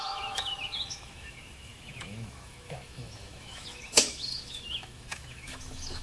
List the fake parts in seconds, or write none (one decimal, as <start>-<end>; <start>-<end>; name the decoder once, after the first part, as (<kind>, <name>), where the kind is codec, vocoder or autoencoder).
0.0-6.0 (autoencoder, DAC-VAE)